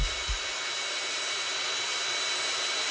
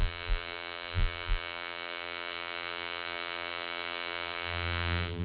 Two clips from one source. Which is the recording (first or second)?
first